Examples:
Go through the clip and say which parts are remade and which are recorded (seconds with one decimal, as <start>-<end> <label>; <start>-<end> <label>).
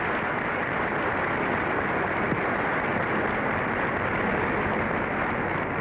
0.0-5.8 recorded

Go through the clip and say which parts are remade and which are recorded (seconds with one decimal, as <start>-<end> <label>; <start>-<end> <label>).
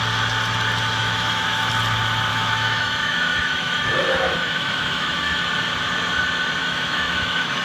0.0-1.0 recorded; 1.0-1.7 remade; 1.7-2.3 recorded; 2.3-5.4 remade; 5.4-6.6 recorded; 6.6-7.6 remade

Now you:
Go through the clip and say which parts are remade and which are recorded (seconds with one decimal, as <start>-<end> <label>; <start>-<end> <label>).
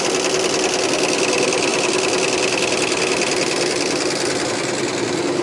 0.0-5.4 recorded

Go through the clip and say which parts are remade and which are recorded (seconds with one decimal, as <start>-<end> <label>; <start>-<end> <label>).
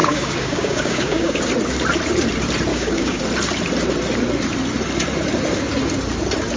0.0-1.4 remade; 1.4-2.7 recorded; 2.7-3.2 remade; 3.2-6.6 recorded